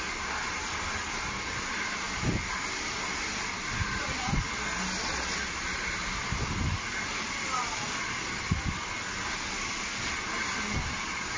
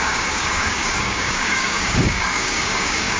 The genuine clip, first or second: first